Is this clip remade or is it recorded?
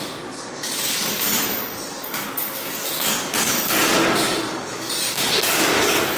remade